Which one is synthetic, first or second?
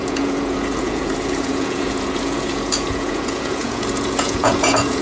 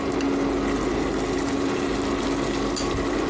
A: first